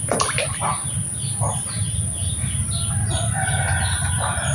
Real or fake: real